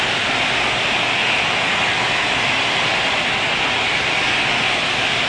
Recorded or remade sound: recorded